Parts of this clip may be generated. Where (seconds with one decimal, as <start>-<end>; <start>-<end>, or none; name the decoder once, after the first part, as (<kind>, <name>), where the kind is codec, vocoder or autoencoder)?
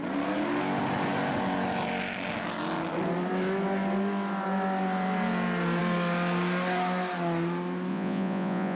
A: 7.9-8.8 (vocoder, Vocos)